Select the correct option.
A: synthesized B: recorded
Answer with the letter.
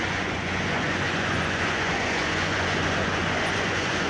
A